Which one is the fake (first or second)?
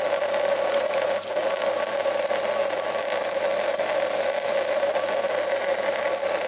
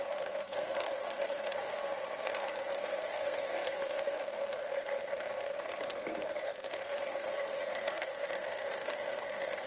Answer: second